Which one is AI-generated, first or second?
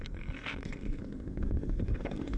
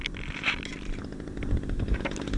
first